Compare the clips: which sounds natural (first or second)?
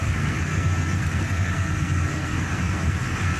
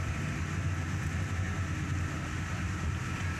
second